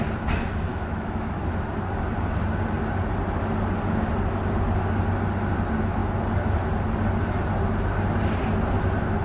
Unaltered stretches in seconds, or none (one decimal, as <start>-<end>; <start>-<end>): 0.0-0.7; 1.4-9.2